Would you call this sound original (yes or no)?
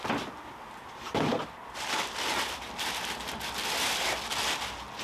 yes